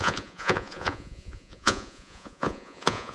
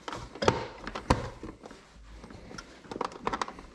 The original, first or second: second